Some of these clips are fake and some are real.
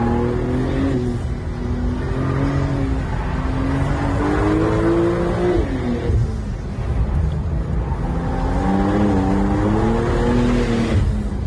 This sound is real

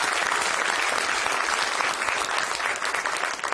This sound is real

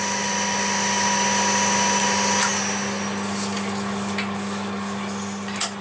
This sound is real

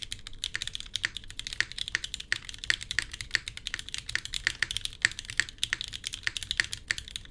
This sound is real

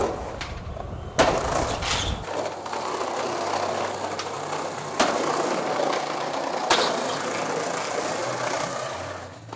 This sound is real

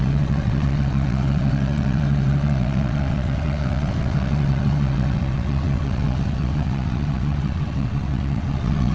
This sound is fake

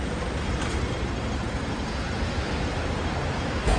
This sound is real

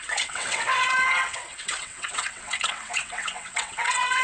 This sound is fake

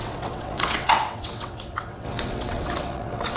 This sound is fake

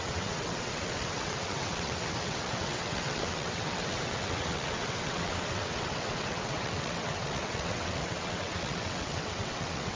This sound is fake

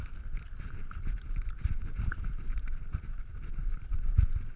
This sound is real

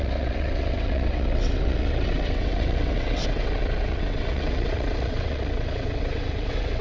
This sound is fake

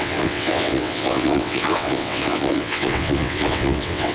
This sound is fake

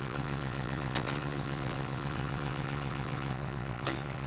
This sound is fake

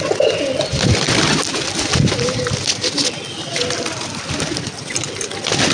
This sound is real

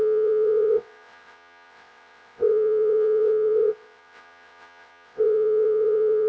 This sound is fake